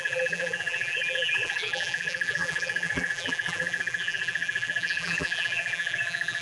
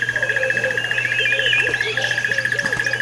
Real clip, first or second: second